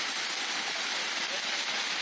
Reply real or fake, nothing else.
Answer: real